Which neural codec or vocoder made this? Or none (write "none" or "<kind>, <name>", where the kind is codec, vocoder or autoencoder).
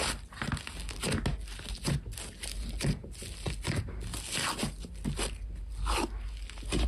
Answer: none